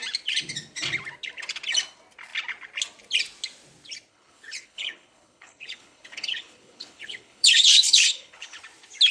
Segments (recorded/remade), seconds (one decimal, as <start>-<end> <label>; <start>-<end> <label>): 0.0-4.1 recorded; 4.1-8.6 remade; 8.6-9.1 recorded